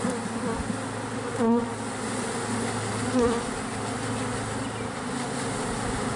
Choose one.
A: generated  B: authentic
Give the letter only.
B